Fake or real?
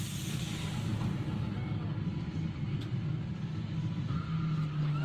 real